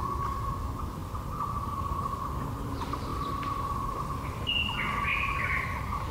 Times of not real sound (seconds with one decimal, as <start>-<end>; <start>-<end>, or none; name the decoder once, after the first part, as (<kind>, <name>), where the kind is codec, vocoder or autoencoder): 3.1-4.0 (vocoder, BigVGAN v2)